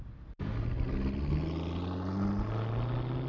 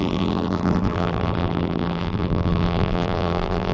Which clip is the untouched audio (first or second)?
first